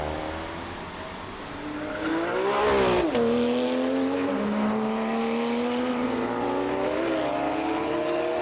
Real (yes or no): yes